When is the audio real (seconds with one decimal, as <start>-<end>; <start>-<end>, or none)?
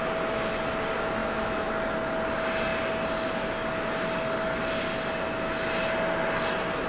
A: 0.0-1.2; 1.7-6.9